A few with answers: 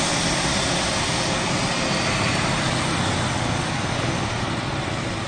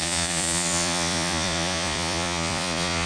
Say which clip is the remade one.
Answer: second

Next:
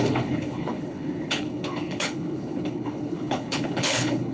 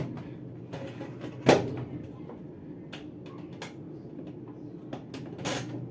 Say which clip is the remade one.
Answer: first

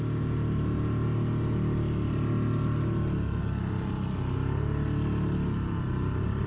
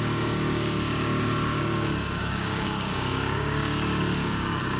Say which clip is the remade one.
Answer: second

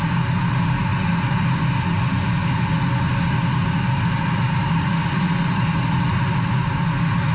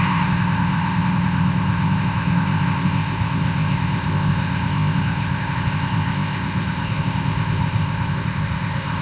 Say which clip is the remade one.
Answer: second